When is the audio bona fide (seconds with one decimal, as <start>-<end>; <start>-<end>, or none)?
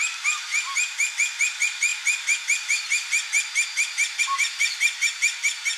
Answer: 0.0-5.8